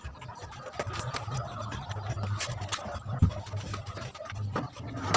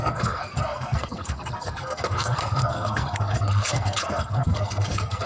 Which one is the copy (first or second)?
second